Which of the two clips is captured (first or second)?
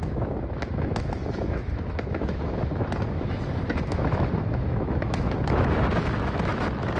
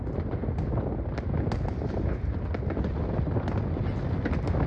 second